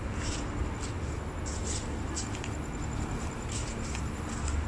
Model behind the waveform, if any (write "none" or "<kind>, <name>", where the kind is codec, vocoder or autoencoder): none